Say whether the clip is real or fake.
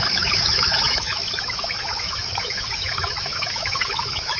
fake